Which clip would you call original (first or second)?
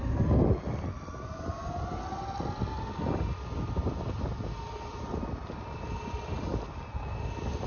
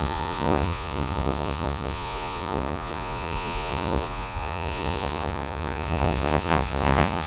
first